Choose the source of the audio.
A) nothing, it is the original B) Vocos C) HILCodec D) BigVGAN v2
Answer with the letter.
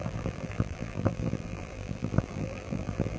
D